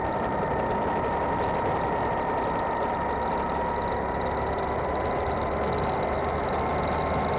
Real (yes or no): yes